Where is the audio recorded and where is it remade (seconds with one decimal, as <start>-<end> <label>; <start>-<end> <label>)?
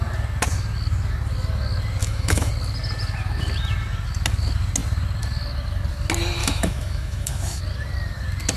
0.0-2.0 recorded; 2.0-2.5 remade; 2.5-6.4 recorded; 6.4-7.6 remade; 7.6-8.6 recorded